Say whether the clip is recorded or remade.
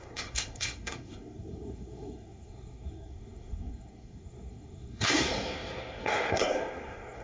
remade